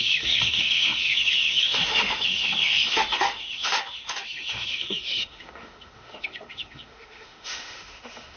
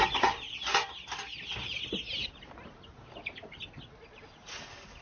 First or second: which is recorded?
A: second